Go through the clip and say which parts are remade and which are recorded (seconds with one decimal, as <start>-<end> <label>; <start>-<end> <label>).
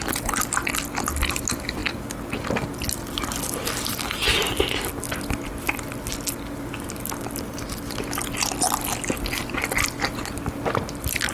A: 0.0-11.3 recorded